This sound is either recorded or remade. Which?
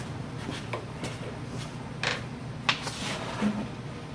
recorded